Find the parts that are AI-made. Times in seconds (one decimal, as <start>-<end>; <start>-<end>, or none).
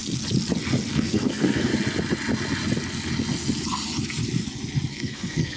0.9-1.7; 4.9-5.6